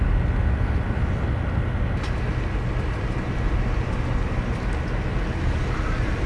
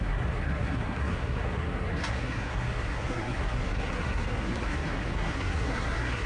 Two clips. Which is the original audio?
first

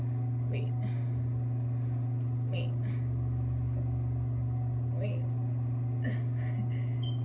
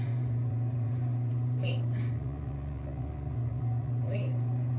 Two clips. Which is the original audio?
first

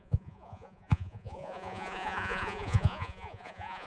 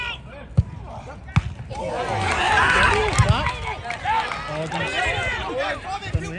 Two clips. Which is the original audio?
second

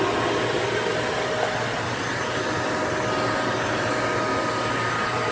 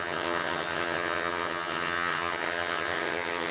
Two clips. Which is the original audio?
first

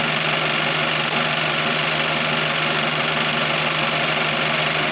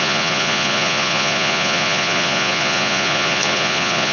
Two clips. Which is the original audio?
first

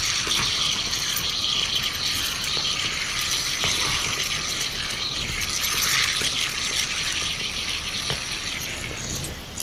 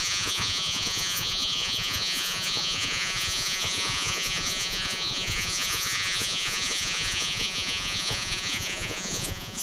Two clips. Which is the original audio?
first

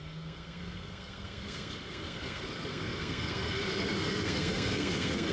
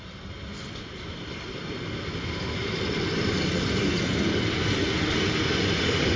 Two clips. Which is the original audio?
second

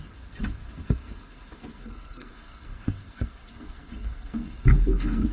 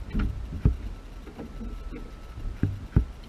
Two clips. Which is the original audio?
second